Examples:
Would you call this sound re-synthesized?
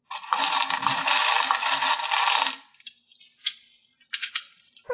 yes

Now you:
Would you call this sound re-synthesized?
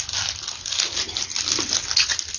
no